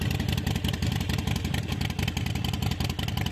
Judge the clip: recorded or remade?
recorded